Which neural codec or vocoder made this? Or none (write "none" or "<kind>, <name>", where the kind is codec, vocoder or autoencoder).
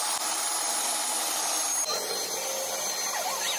none